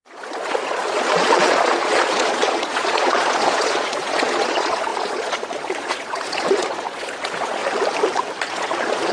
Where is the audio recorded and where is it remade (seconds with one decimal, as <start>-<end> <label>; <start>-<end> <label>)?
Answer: 0.0-7.6 remade; 7.6-8.4 recorded; 8.4-9.1 remade